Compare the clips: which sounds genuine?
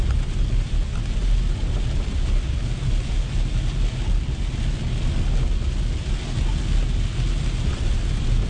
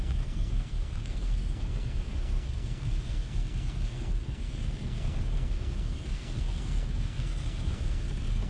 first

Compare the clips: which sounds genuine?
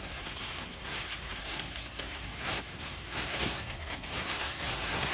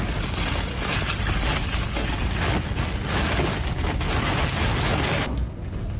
second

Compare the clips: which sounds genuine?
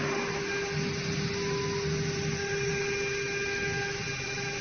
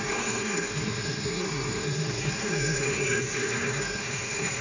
first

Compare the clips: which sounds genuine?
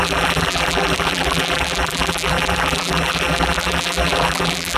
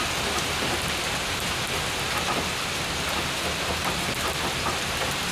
second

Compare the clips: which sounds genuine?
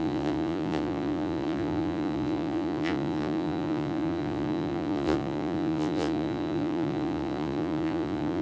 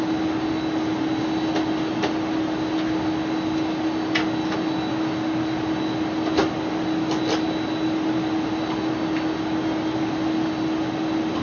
second